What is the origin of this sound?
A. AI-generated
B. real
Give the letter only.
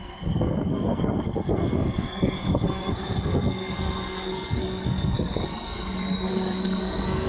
A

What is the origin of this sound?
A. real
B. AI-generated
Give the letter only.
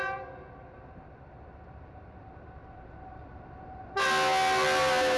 A